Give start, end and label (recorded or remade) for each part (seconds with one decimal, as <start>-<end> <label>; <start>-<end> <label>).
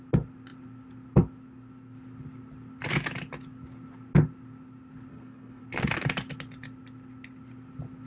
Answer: 0.0-5.1 recorded; 5.1-5.6 remade; 5.6-8.1 recorded